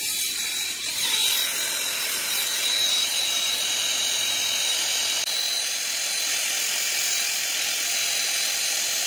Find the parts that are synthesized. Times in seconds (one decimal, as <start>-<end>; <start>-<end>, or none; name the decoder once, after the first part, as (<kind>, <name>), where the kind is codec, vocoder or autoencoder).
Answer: 0.0-1.2 (vocoder, BigVGAN v2); 2.1-5.0; 8.6-9.1